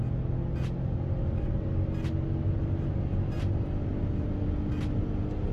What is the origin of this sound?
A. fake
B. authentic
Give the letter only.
B